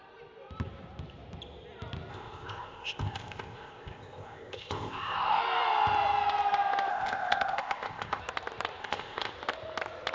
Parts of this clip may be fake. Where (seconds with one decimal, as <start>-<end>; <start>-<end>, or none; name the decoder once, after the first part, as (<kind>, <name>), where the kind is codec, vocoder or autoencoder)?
2.1-5.4 (codec, ZipCodec); 6.9-8.2; 8.8-9.3